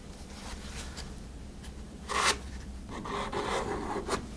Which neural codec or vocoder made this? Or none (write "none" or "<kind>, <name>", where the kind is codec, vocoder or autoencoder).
vocoder, BigVGAN v2